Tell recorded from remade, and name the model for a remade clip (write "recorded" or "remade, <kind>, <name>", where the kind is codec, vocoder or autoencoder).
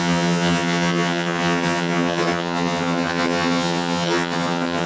remade, vocoder, HiFi-GAN